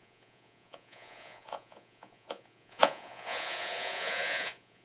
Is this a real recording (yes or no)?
no